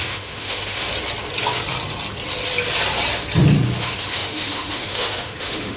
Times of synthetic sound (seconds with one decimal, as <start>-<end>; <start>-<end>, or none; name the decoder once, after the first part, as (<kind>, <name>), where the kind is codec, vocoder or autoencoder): 0.0-0.9 (autoencoder, DAC-VAE); 3.8-5.8